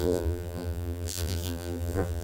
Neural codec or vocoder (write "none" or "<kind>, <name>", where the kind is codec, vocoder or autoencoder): vocoder, BigVGAN v2